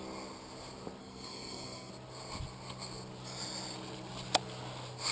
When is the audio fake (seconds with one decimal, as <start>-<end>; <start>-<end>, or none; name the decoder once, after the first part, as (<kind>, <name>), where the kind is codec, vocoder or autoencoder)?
1.0-1.9 (codec, SNAC)